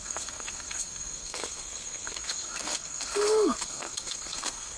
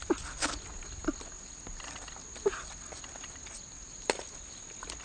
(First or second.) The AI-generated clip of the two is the first